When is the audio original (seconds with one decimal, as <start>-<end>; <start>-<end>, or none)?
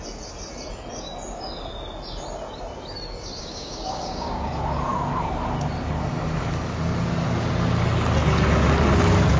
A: 0.0-3.4; 4.5-9.4